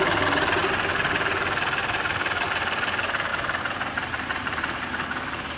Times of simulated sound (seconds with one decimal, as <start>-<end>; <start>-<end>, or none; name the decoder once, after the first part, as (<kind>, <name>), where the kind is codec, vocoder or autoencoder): 1.8-2.5 (vocoder, BigVGAN v2); 3.3-4.8